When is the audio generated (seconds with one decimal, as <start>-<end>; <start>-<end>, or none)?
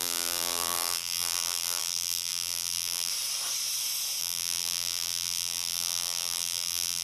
0.0-3.1; 4.2-7.0